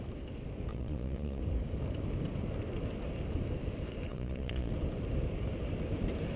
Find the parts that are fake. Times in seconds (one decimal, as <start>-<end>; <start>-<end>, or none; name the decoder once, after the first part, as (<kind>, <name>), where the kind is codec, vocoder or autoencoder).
0.7-1.4 (vocoder, Vocos); 4.1-4.7